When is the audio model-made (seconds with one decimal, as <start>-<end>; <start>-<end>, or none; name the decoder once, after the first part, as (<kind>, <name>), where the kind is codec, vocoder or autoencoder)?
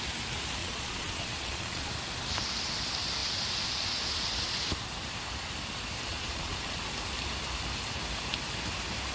0.6-1.9 (vocoder, Vocos); 6.1-6.8